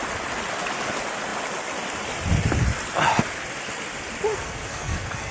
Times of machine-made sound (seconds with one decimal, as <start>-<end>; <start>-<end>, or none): 4.3-5.3